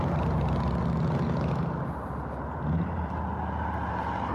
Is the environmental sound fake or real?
real